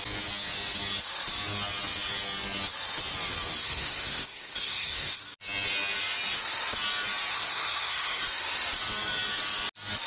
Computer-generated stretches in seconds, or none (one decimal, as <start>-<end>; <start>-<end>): 3.6-5.2; 7.3-8.2